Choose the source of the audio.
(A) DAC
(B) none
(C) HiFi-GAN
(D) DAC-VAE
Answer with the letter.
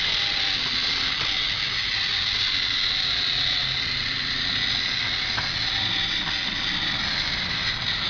B